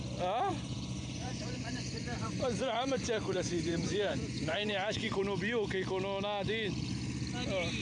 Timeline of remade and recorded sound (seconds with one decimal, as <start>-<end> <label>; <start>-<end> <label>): 0.0-0.5 recorded; 0.5-5.2 remade; 5.2-7.8 recorded